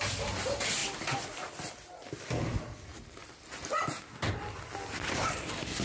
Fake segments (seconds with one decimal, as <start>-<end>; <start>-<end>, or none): none